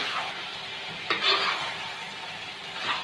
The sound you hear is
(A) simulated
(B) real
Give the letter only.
B